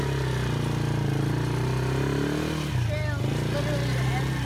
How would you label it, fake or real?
real